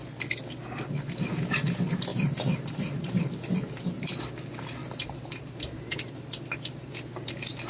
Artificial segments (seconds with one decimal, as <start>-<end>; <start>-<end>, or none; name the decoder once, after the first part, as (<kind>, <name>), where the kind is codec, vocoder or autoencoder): 2.1-3.2 (vocoder, BigVGAN v2); 4.8-6.9